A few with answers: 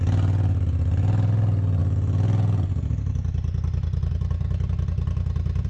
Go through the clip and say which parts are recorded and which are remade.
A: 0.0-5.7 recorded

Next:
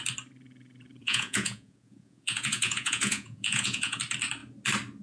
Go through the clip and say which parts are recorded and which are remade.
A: 0.0-1.0 recorded; 1.0-4.0 remade; 4.0-5.0 recorded